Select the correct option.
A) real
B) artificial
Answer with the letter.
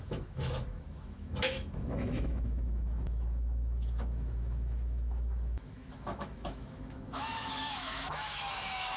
B